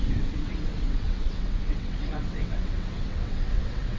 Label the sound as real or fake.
fake